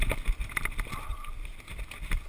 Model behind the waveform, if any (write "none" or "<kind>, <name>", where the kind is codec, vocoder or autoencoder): none